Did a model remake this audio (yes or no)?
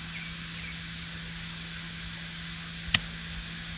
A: no